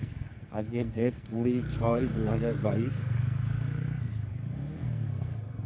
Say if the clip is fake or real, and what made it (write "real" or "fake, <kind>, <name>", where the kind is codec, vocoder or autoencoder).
fake, codec, SNAC